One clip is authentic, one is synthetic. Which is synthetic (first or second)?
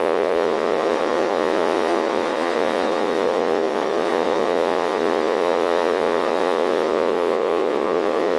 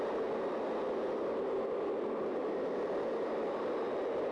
first